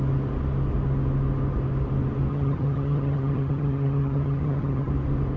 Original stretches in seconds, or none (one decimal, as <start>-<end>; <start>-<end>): 0.0-2.3; 4.9-5.4